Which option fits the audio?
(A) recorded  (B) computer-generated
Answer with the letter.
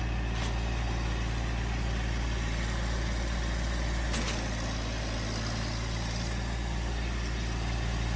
A